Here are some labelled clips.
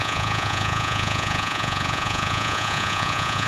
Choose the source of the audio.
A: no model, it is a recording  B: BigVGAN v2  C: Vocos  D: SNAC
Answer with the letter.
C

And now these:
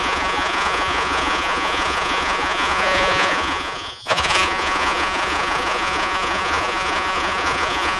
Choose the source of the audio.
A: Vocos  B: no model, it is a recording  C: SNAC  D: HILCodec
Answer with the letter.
A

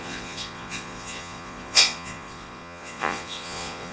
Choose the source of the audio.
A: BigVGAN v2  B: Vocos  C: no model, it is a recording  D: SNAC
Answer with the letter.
B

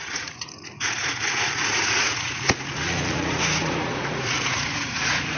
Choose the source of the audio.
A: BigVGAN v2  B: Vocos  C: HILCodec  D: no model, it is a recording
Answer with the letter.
B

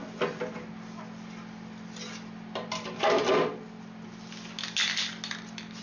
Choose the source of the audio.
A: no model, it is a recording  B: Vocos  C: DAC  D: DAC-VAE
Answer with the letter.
A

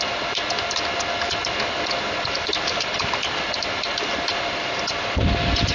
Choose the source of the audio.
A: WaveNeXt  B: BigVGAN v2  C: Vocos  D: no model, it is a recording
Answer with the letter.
D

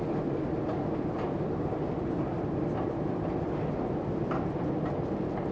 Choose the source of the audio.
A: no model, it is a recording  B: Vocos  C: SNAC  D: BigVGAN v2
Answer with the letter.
A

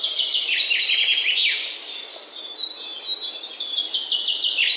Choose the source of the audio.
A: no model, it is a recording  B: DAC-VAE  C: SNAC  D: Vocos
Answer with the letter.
A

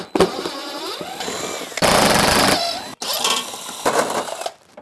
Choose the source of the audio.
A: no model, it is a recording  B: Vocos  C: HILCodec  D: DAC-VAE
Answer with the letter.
A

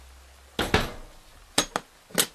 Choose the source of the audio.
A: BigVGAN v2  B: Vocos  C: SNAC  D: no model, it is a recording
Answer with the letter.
D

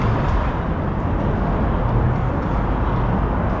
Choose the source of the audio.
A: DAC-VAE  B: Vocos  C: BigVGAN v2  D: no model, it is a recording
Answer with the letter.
D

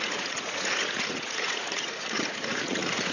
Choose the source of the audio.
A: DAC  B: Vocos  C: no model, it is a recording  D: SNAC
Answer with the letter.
B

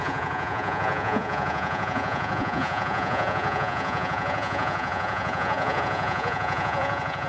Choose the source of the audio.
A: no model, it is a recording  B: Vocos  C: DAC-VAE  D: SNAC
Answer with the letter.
B